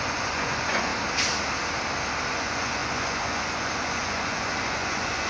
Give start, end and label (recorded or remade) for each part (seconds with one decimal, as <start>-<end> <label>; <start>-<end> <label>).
0.0-0.9 remade; 0.9-2.3 recorded; 2.3-5.3 remade